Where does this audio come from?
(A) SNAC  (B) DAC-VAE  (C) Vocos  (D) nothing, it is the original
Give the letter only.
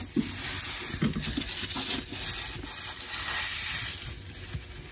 D